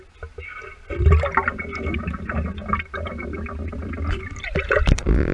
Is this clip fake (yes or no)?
no